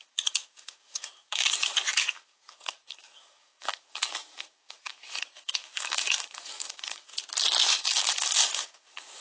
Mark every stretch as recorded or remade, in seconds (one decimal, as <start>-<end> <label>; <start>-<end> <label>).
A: 0.0-7.1 remade; 7.1-7.7 recorded; 7.7-9.2 remade